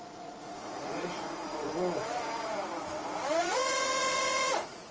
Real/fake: fake